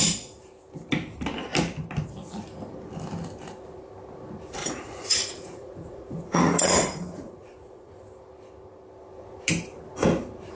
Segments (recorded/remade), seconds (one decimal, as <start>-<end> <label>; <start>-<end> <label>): 0.0-4.6 recorded; 4.6-7.9 remade; 7.9-10.6 recorded